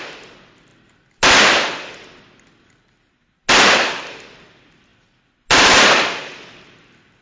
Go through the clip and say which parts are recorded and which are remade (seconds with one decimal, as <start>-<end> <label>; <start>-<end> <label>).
0.0-7.2 recorded